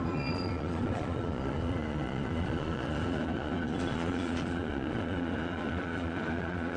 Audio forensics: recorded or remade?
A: remade